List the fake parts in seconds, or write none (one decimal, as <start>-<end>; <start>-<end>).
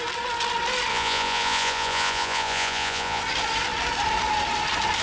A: 0.9-3.2